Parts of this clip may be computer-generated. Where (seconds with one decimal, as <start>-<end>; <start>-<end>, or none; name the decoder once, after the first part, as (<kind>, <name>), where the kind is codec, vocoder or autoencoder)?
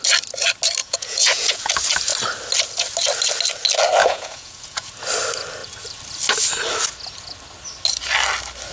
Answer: 0.8-1.7 (vocoder, Vocos); 4.0-4.9